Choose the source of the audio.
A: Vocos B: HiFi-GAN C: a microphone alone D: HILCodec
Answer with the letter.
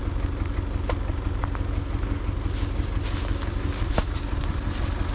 C